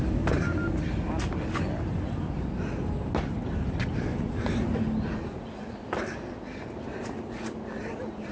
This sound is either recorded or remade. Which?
recorded